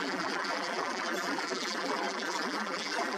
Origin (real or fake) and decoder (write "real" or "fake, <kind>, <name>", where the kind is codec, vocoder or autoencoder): fake, vocoder, BigVGAN v2